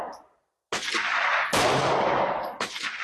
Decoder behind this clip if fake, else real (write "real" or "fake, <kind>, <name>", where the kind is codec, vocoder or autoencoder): real